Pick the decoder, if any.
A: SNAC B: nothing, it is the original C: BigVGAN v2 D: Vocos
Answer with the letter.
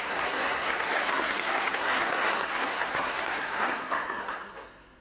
A